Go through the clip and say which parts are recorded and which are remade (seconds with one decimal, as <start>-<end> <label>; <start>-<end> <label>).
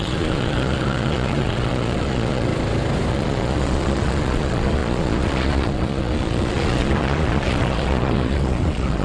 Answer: 0.0-2.5 remade; 2.5-3.1 recorded; 3.1-9.0 remade